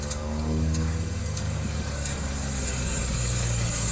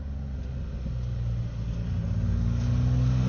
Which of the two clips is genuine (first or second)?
second